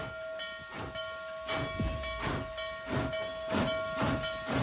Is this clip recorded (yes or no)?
yes